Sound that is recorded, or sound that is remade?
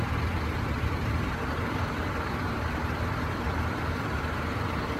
remade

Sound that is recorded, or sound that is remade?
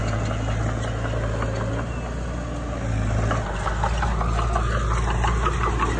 recorded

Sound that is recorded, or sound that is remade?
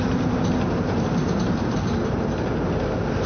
remade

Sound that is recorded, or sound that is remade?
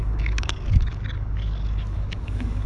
remade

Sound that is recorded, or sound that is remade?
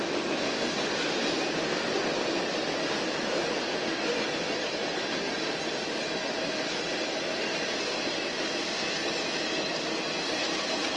recorded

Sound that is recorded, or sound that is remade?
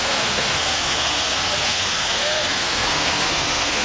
remade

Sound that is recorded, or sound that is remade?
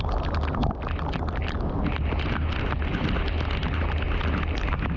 recorded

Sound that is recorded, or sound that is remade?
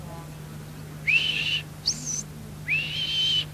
recorded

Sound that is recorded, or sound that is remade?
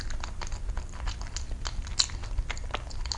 recorded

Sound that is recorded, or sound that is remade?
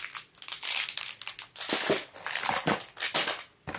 recorded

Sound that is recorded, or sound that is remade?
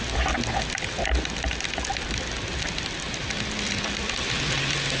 recorded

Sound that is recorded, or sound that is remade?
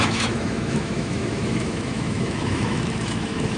remade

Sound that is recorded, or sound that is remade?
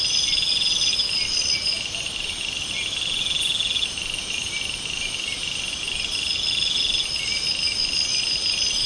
recorded